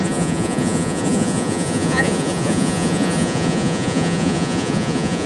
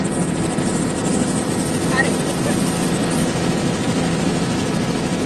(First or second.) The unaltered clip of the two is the second